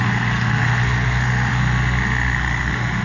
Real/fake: fake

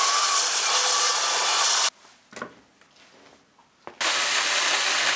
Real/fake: real